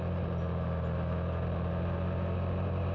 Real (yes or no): yes